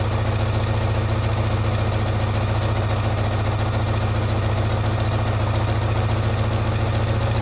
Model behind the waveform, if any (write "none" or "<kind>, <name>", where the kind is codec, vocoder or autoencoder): none